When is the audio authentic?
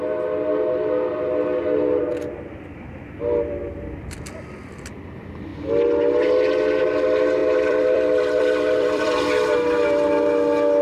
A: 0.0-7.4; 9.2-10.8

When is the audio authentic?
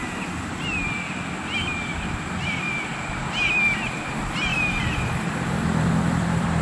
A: 0.0-1.9; 2.5-4.5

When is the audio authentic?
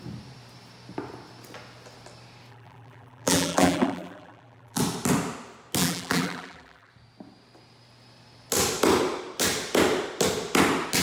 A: 0.0-2.5; 4.8-5.8; 6.9-11.0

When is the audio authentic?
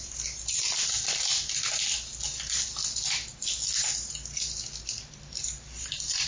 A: 1.3-5.1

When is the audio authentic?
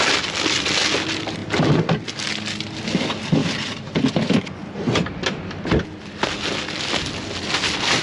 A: 0.0-3.4; 4.1-8.0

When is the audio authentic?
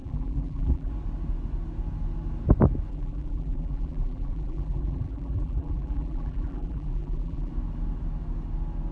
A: 0.9-2.9; 7.5-8.9